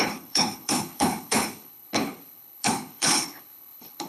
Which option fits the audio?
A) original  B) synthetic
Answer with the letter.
B